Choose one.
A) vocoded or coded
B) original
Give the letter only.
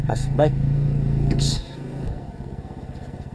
A